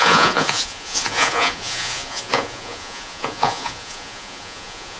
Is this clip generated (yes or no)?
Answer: yes